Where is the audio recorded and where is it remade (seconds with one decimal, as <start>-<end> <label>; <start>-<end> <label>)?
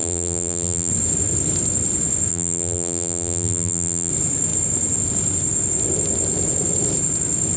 0.0-0.9 remade; 0.9-2.3 recorded; 2.3-4.1 remade; 4.1-7.6 recorded